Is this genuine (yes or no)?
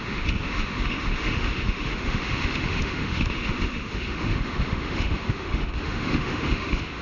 no